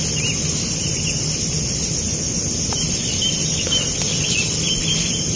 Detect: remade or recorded recorded